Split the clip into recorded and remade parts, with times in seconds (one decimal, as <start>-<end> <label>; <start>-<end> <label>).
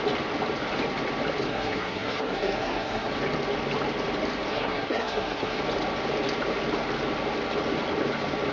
0.0-1.5 recorded; 1.5-3.1 remade; 3.1-4.5 recorded; 4.5-5.6 remade; 5.6-8.5 recorded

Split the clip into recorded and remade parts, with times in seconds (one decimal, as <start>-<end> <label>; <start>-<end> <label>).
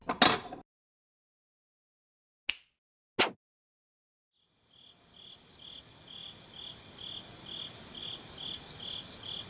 0.0-9.5 recorded